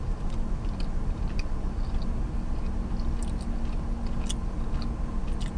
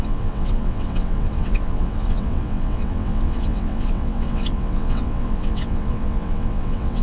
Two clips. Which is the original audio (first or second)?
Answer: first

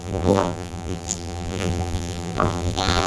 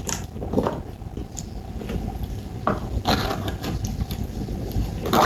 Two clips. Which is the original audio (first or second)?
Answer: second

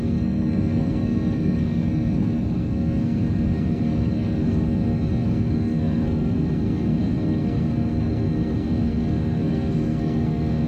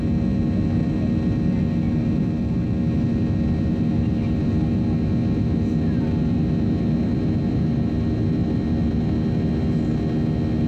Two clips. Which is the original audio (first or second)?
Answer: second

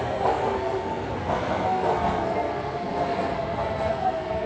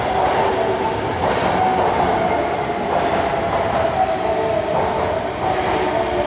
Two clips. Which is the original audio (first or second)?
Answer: second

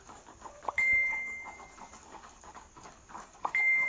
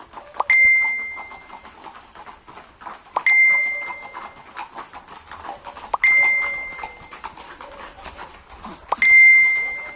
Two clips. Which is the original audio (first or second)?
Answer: second